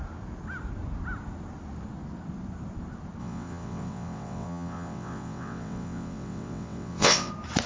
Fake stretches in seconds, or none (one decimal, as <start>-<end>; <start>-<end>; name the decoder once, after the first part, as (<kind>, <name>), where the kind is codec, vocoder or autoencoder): 3.2-7.3 (vocoder, WaveNeXt)